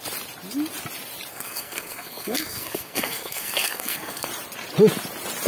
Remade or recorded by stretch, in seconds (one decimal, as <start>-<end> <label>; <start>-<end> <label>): 0.0-1.3 recorded; 1.3-4.3 remade; 4.3-5.5 recorded